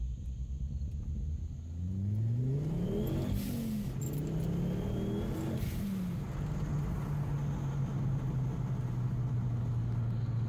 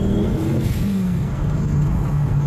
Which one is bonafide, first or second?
first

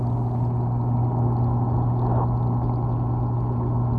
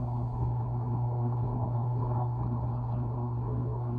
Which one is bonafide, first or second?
first